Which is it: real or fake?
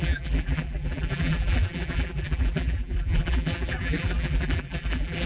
fake